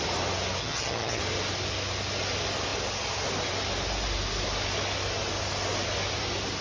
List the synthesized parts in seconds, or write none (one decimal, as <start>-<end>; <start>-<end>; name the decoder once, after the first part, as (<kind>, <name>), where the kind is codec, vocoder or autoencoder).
0.6-1.2 (vocoder, HiFi-GAN)